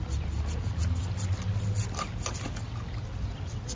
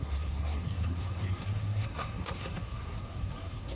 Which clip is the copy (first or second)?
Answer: second